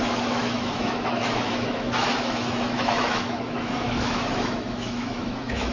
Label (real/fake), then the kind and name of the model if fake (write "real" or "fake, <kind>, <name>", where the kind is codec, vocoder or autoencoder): fake, autoencoder, DAC-VAE